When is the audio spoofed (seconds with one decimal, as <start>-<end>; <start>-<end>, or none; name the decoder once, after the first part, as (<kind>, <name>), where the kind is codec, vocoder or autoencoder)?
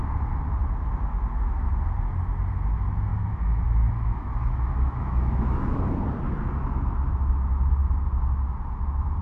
3.1-5.8 (autoencoder, DAC-VAE)